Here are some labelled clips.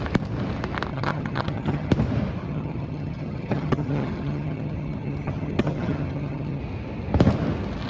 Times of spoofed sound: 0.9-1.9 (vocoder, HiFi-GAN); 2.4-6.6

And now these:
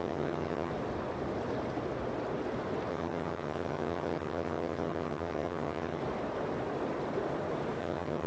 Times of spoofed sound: 0.0-0.7 (vocoder, HiFi-GAN); 2.9-6.0; 7.8-8.3

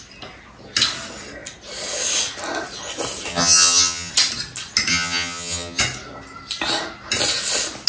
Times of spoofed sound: 3.3-4.1 (vocoder, HiFi-GAN); 4.9-5.8